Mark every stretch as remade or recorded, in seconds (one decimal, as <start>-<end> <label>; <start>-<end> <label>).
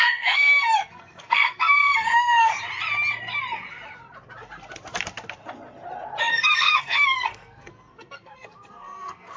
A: 0.0-2.5 remade; 2.5-6.3 recorded; 6.3-9.4 remade